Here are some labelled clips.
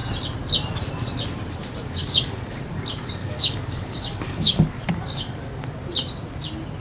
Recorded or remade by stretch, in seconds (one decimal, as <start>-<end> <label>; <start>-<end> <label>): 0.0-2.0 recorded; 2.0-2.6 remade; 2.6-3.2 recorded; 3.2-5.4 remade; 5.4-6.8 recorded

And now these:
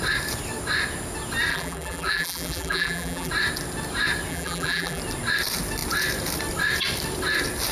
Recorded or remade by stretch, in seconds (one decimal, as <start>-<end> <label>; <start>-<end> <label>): 0.0-1.5 recorded; 1.5-3.3 remade; 3.3-4.3 recorded; 4.3-5.0 remade; 5.0-7.7 recorded

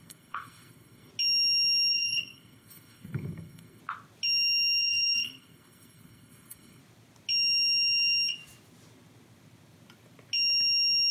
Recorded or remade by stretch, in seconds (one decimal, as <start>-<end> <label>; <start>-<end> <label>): 0.0-1.1 remade; 1.1-1.9 recorded; 1.9-3.8 remade; 3.8-4.8 recorded; 4.8-6.8 remade; 6.8-11.1 recorded

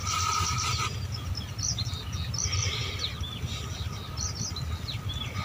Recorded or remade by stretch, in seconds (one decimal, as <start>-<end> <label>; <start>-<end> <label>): 0.0-5.4 recorded